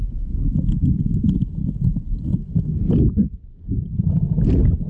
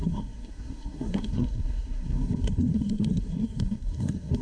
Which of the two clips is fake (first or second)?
second